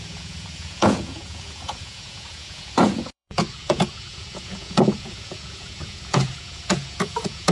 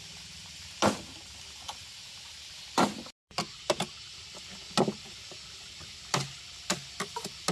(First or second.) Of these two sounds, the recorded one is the second